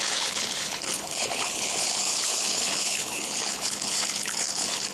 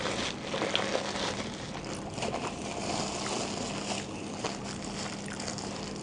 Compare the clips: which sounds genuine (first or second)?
second